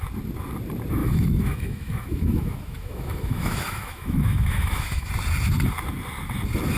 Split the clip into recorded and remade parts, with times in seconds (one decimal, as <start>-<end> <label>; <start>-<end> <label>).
0.0-1.0 recorded; 1.0-5.1 remade; 5.1-6.8 recorded